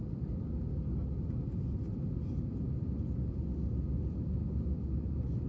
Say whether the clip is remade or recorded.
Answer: recorded